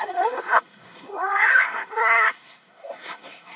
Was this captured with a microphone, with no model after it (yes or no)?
no